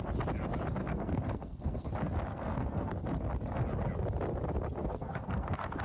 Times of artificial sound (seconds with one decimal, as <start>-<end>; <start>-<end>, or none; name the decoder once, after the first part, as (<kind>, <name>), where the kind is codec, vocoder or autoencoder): 0.8-1.9 (codec, SNAC); 2.3-2.9; 4.8-5.8